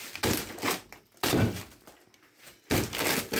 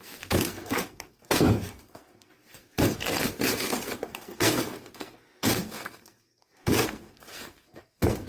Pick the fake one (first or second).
second